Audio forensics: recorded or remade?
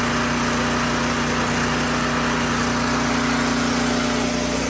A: recorded